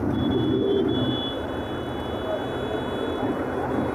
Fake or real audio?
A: real